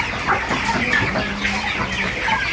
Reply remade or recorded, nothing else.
recorded